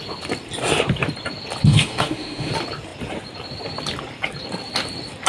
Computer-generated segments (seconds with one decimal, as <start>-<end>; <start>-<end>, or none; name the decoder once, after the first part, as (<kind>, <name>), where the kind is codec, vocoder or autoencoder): 1.7-2.5 (autoencoder, DAC-VAE)